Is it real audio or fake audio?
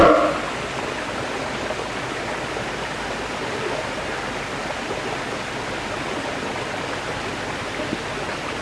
real